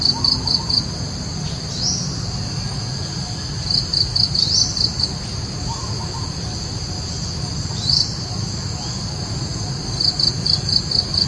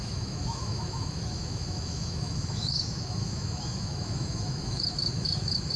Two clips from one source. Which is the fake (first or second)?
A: second